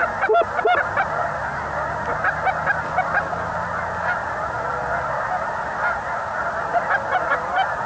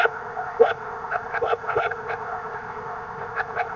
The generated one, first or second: second